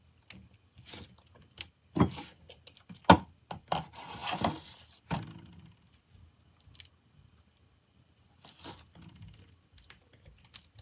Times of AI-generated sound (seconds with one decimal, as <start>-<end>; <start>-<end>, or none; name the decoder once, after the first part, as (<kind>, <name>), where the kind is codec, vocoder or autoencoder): none